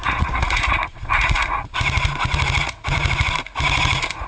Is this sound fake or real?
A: fake